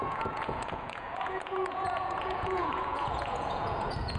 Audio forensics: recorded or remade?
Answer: remade